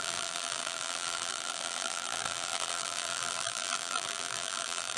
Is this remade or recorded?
remade